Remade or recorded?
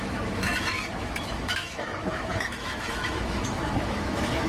remade